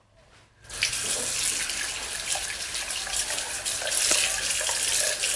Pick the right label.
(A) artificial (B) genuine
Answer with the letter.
B